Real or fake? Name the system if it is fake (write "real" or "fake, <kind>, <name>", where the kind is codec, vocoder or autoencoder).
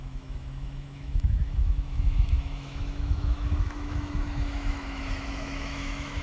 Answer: fake, autoencoder, DAC-VAE